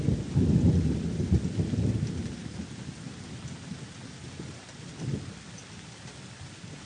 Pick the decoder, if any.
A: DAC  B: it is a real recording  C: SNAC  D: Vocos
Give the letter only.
B